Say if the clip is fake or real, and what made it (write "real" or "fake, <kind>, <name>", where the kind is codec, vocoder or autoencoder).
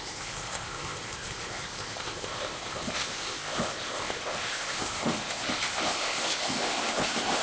fake, codec, ZipCodec